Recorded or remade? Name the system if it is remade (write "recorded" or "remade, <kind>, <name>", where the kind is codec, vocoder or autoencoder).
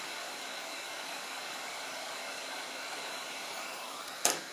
remade, codec, DAC